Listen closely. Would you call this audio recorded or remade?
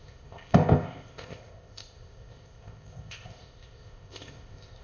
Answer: remade